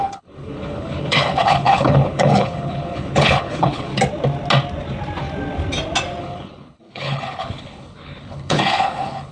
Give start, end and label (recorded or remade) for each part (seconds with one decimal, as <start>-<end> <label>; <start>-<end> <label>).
0.0-3.9 remade; 3.9-6.2 recorded; 6.2-9.3 remade